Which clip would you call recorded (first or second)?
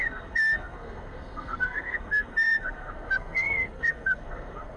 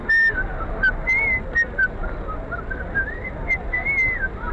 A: second